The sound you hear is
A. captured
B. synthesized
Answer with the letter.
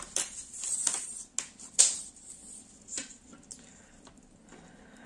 A